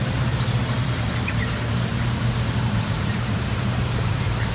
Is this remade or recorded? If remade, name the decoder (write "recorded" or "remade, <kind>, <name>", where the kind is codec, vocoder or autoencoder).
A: remade, vocoder, BigVGAN v2